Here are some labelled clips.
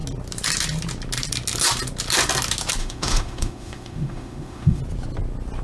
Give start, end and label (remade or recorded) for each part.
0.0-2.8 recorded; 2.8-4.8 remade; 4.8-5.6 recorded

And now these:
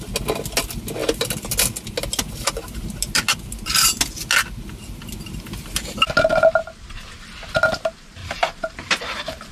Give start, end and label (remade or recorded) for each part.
0.0-8.2 recorded; 8.2-9.5 remade

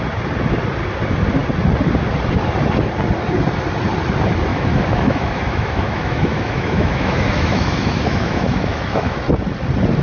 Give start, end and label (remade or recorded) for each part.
0.0-4.5 recorded; 4.5-9.2 remade; 9.2-10.0 recorded

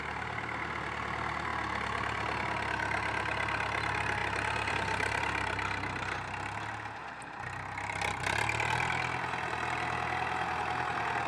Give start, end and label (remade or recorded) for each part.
0.0-11.3 recorded